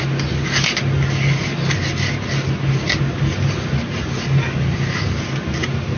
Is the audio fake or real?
real